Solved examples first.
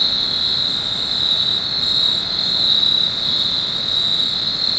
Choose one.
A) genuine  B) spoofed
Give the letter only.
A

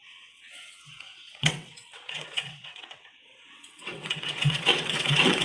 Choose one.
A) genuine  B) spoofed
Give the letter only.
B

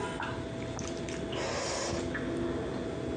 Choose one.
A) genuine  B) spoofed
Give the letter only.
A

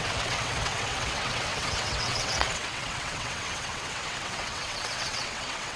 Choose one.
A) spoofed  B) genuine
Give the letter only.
A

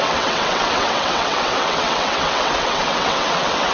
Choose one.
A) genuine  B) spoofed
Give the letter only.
B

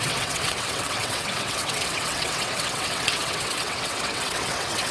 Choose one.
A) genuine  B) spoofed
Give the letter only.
B